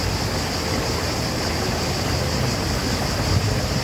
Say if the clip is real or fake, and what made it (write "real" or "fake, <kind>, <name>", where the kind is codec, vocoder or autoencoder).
real